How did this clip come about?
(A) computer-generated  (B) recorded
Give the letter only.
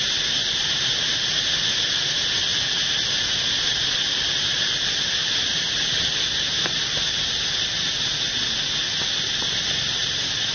B